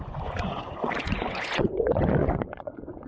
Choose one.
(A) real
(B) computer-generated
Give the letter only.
B